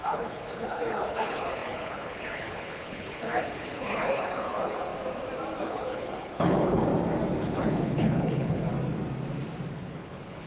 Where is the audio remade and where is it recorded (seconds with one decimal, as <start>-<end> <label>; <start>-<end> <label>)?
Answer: 0.0-4.9 remade; 4.9-5.6 recorded; 5.6-6.9 remade; 6.9-7.4 recorded; 7.4-8.7 remade; 8.7-9.7 recorded; 9.7-10.5 remade